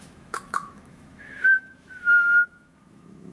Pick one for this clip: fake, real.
fake